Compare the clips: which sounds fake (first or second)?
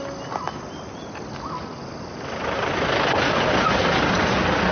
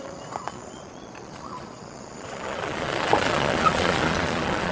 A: second